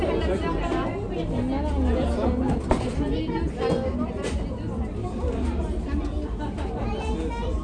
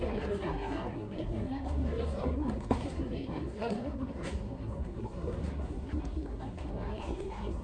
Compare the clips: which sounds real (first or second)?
first